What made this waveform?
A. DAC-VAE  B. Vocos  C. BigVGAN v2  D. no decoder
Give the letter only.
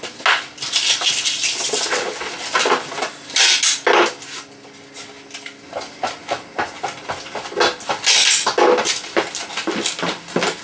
D